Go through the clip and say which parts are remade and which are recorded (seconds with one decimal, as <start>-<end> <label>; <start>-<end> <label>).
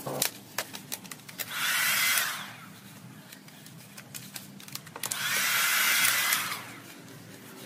0.0-7.7 recorded